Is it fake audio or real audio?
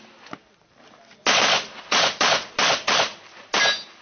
real